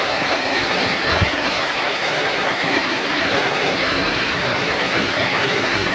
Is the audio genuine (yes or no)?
no